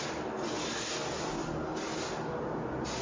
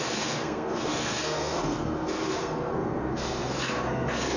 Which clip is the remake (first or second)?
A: second